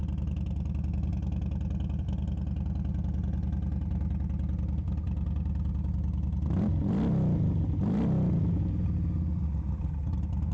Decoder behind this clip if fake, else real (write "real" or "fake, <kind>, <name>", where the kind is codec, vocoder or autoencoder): real